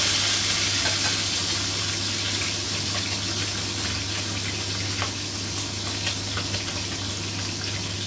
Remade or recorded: recorded